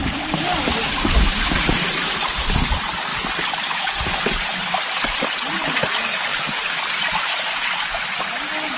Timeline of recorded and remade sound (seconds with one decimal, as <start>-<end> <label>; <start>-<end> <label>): 0.0-6.3 recorded; 6.3-7.5 remade; 7.5-8.8 recorded